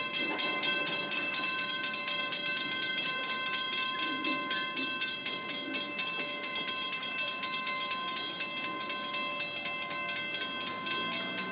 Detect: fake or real real